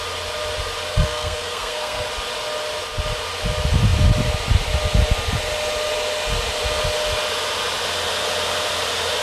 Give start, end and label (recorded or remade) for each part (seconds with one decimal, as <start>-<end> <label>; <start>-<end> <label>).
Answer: 0.0-0.9 recorded; 0.9-2.1 remade; 2.1-9.2 recorded